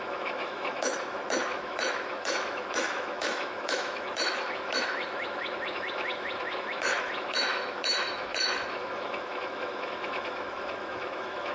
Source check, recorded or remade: remade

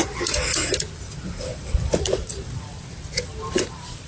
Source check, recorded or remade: remade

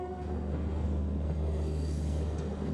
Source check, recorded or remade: remade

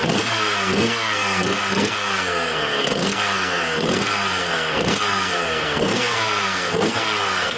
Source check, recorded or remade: remade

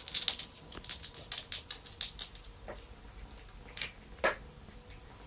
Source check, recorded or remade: recorded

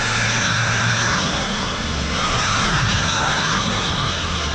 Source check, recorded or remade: remade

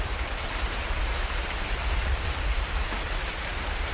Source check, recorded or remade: remade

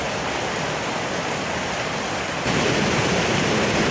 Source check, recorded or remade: recorded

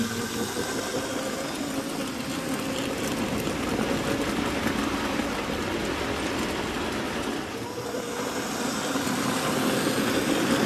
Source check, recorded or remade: recorded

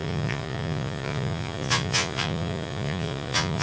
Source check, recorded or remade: remade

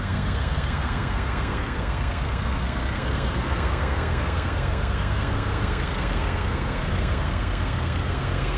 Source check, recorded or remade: remade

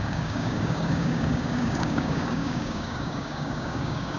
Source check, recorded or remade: remade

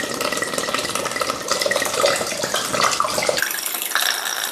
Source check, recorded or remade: recorded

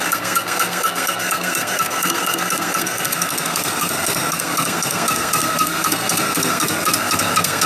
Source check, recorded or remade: remade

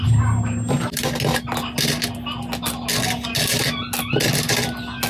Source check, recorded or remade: recorded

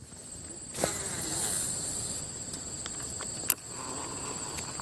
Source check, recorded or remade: recorded